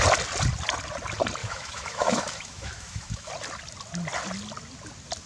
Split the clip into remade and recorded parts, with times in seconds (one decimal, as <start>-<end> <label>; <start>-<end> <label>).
0.0-1.4 recorded; 1.4-3.3 remade; 3.3-5.3 recorded